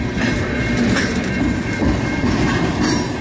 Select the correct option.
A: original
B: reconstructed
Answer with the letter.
B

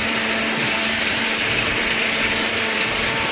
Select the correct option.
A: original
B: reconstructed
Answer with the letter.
B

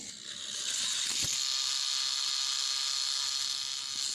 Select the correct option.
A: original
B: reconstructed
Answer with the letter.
A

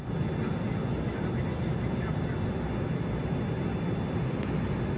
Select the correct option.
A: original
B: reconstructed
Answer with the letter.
A